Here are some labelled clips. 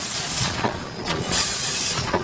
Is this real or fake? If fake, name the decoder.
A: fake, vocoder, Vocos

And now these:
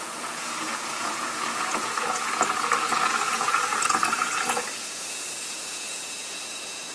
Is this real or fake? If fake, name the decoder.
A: fake, vocoder, Vocos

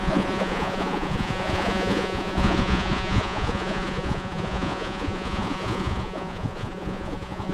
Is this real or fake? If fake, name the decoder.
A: fake, vocoder, Vocos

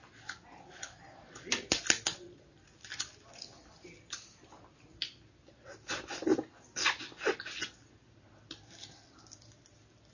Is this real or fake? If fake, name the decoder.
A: real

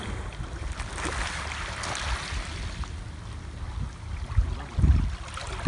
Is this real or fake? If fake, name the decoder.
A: real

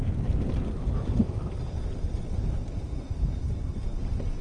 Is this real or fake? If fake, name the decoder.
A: real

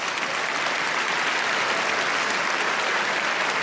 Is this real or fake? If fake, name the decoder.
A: real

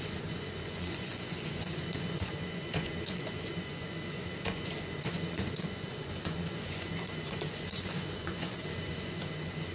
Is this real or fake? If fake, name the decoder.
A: fake, vocoder, Vocos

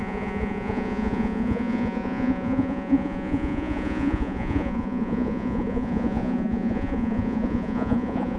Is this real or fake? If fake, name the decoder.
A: fake, vocoder, Vocos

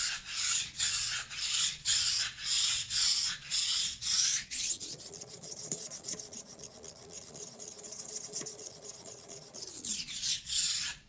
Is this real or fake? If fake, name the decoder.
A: fake, vocoder, Vocos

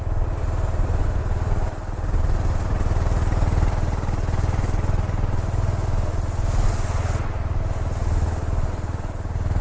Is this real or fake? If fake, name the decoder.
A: real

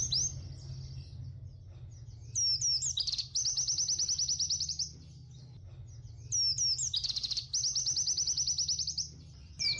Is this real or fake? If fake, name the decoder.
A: real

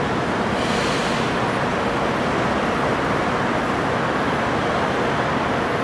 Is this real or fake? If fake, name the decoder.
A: real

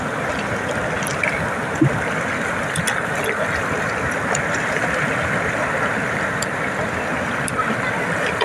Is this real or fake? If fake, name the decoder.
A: real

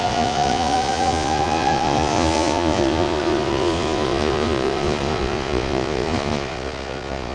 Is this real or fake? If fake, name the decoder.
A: fake, vocoder, Vocos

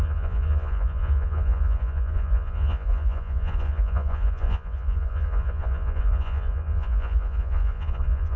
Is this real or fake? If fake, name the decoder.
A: fake, vocoder, Vocos